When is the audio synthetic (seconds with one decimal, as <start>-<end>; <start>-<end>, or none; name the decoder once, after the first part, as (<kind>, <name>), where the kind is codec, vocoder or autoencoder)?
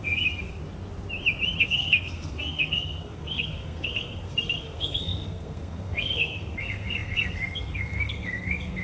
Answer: 0.0-0.6 (codec, SNAC); 1.6-8.8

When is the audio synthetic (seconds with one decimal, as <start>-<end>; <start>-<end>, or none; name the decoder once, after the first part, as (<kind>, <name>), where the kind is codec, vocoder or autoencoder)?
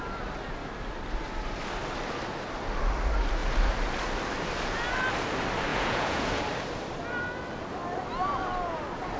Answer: 5.7-6.4 (vocoder, Vocos)